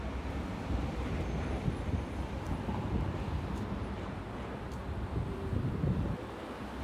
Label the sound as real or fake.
real